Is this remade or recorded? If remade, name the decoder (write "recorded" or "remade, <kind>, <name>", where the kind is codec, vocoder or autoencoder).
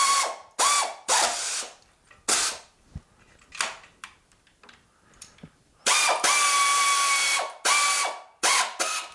recorded